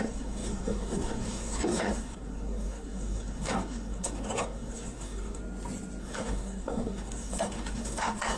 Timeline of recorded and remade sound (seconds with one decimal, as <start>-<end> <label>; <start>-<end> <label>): 0.0-5.4 remade; 5.4-6.0 recorded; 6.0-8.4 remade